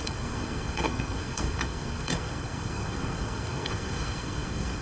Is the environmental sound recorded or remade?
remade